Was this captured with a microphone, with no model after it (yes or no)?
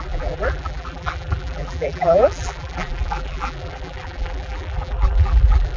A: no